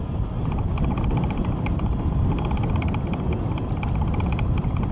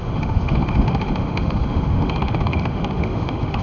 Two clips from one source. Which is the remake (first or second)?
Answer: second